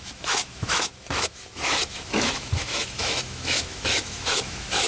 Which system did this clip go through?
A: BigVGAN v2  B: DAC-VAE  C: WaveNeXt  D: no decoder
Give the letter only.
B